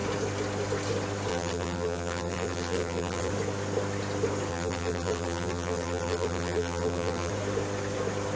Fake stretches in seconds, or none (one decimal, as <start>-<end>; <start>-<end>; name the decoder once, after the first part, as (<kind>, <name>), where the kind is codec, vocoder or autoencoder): 1.3-3.3 (vocoder, BigVGAN v2); 4.5-7.3